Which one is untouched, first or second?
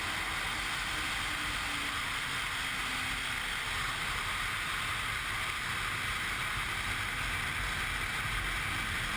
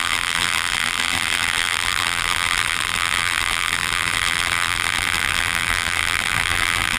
first